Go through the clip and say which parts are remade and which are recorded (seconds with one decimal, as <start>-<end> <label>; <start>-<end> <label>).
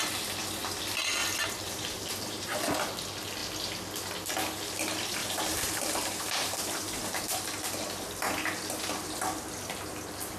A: 0.0-1.2 recorded; 1.2-2.6 remade; 2.6-5.2 recorded; 5.2-7.6 remade; 7.6-10.4 recorded